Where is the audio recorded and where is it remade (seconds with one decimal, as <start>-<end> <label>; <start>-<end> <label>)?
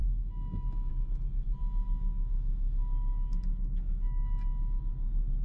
0.0-0.9 remade; 0.9-1.6 recorded; 1.6-4.8 remade; 4.8-5.4 recorded